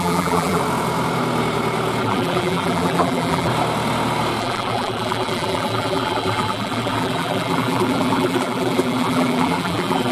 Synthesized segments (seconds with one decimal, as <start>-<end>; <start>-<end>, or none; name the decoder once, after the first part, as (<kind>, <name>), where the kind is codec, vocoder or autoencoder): 0.0-0.6 (vocoder, BigVGAN v2); 2.0-3.5; 4.4-10.1